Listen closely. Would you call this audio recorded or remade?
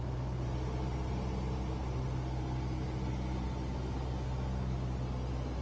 recorded